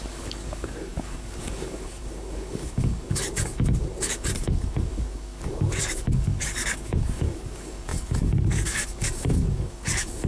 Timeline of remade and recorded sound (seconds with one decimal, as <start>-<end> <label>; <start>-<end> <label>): 0.0-10.3 remade